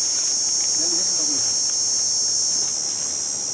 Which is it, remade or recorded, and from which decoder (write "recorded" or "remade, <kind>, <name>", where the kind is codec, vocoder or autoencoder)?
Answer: recorded